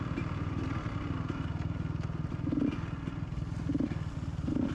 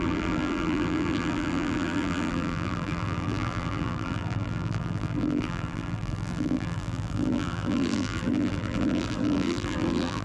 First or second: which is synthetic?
second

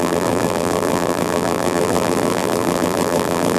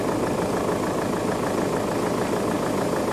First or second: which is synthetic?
first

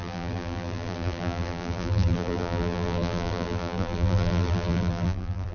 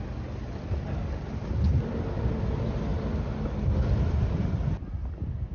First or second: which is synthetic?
first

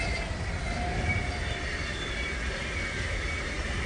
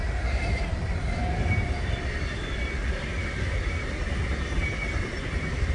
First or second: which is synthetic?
second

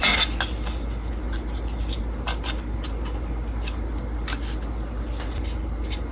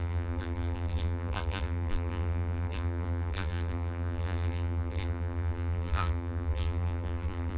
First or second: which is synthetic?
second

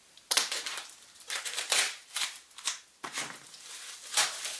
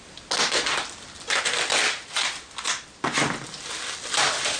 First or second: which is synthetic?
first